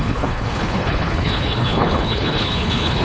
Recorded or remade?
remade